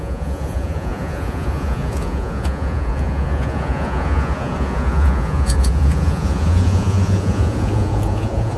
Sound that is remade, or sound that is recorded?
remade